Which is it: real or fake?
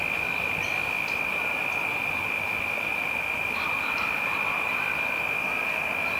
real